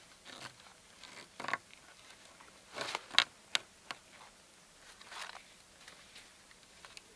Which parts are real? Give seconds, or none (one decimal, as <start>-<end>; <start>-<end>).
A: 0.0-7.2